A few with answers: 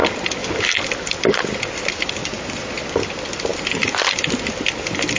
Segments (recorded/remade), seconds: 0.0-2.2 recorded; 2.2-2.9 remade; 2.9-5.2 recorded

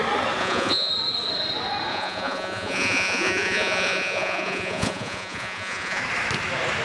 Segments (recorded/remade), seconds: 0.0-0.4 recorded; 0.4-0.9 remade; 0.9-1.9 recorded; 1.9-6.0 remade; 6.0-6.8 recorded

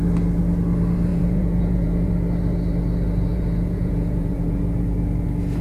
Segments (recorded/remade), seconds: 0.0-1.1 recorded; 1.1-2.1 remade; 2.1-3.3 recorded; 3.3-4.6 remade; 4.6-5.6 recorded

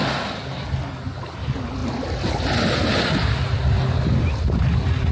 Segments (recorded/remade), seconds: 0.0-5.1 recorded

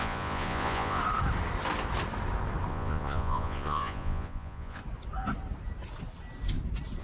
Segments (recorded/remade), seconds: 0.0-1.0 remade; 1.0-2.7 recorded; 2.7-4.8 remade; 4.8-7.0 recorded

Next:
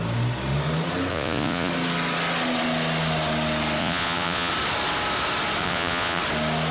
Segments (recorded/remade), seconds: 0.0-1.1 recorded; 1.1-1.7 remade; 1.7-3.8 recorded; 3.8-4.5 remade; 4.5-5.6 recorded; 5.6-6.2 remade; 6.2-6.7 recorded

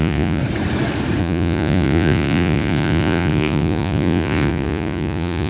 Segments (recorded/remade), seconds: 0.0-0.4 remade; 0.4-1.2 recorded; 1.2-5.5 remade